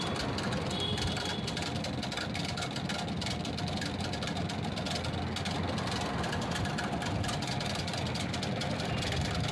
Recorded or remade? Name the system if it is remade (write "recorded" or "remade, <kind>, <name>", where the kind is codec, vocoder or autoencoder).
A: recorded